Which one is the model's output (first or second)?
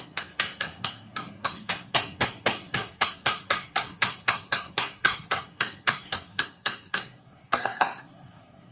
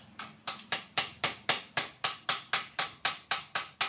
first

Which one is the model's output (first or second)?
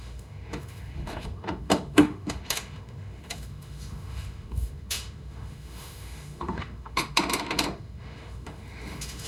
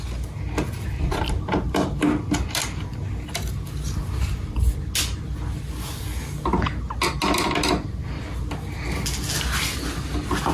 first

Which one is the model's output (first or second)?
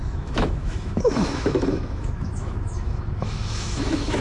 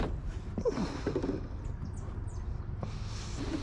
first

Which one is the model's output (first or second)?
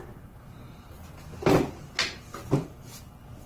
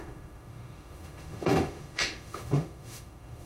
second